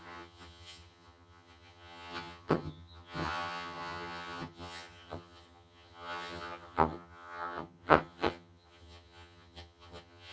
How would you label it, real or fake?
fake